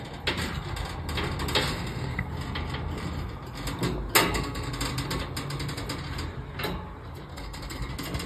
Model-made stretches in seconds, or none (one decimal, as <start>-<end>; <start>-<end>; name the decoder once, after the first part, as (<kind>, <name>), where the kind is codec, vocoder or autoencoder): 1.7-2.3 (codec, SNAC); 4.2-4.7; 7.3-7.9